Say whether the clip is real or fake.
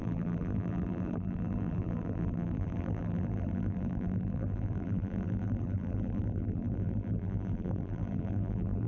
fake